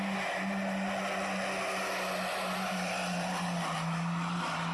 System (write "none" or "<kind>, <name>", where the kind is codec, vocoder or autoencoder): none